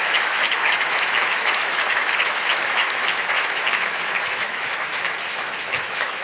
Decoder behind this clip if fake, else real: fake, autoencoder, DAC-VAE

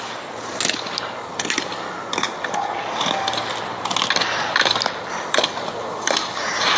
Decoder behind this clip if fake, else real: real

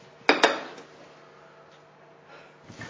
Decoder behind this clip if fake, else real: real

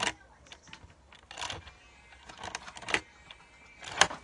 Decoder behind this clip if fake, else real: real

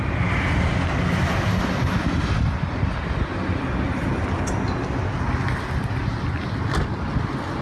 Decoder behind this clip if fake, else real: real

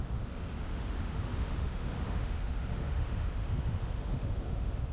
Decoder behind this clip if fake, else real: fake, autoencoder, DAC-VAE